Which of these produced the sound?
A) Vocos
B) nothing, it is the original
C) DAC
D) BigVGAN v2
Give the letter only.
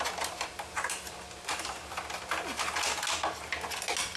B